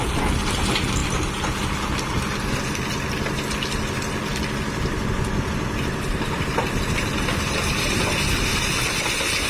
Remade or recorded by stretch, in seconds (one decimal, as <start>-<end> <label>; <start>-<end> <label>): 0.0-9.5 recorded